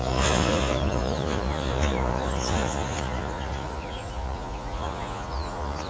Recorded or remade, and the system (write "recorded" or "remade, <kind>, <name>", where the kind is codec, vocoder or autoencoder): remade, vocoder, Vocos